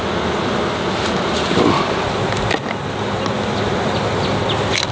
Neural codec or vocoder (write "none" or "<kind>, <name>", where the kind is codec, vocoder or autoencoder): none